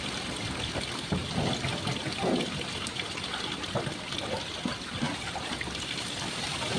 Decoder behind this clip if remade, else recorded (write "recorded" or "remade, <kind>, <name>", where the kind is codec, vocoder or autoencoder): recorded